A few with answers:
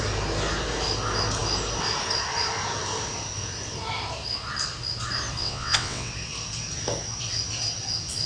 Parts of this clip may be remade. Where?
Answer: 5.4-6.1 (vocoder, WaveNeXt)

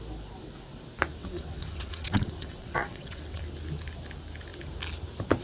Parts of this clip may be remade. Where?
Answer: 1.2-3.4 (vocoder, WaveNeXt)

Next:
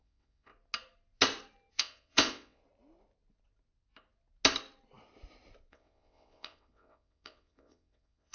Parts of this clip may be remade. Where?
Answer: 0.0-0.5 (vocoder, WaveNeXt); 1.7-2.6; 5.7-8.3